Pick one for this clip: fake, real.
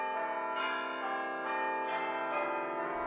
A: real